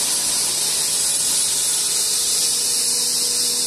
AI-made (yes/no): no